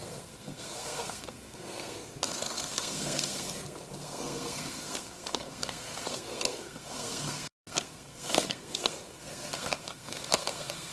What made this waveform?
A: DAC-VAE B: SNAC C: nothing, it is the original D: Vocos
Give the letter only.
B